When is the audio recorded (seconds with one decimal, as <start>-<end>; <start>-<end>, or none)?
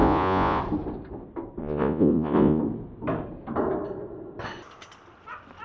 0.6-1.6; 2.6-5.6